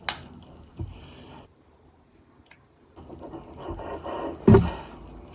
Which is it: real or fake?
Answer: real